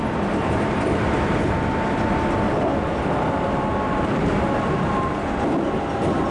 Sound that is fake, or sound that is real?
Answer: real